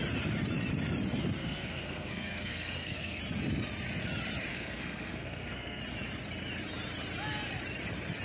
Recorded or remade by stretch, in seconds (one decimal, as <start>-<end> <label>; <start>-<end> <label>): 0.0-1.4 recorded; 1.4-3.2 remade; 3.2-4.5 recorded; 4.5-5.8 remade; 5.8-8.2 recorded